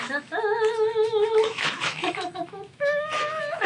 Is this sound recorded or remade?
remade